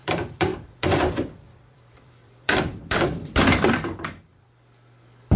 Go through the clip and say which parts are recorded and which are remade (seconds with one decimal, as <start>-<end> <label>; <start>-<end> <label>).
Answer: 0.0-4.3 remade; 4.3-5.4 recorded